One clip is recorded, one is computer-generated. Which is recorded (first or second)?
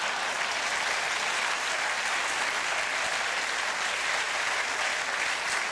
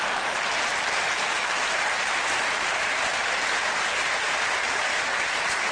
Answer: first